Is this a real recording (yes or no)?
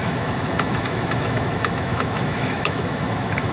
no